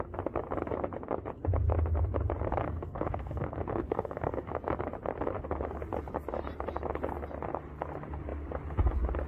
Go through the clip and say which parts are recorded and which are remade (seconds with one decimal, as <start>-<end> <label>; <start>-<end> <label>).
0.0-2.6 recorded; 2.6-4.5 remade; 4.5-9.3 recorded